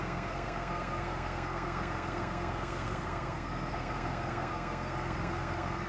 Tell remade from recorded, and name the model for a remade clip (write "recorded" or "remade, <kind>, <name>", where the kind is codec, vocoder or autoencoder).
remade, codec, SNAC